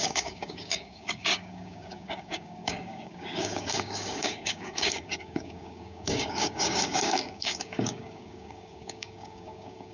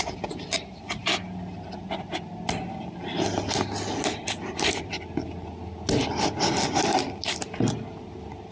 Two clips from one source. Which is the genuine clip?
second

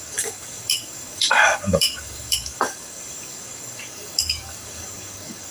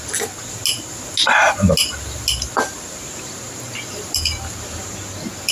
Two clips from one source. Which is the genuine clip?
second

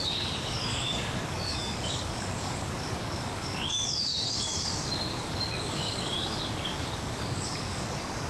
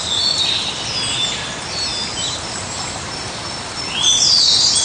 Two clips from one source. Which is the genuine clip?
second